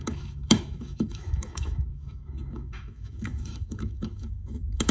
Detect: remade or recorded remade